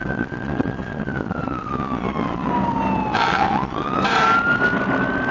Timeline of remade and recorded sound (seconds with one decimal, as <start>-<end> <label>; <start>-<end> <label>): 0.0-2.5 remade; 2.5-3.1 recorded; 3.1-4.0 remade; 4.0-5.3 recorded